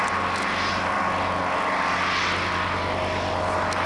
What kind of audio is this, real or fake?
real